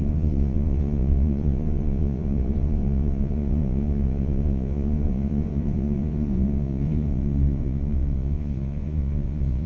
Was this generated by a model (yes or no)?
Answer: yes